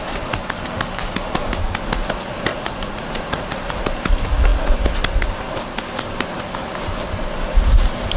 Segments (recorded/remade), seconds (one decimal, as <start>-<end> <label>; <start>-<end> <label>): 0.0-2.5 recorded; 2.5-3.7 remade; 3.7-8.2 recorded